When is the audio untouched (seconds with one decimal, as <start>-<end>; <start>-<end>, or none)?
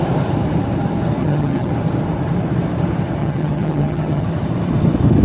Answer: 0.0-1.2; 1.7-3.2; 4.3-5.2